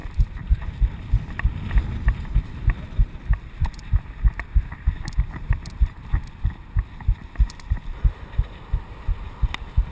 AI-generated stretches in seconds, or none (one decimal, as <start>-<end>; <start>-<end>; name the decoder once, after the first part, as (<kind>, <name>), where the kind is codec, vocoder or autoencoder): none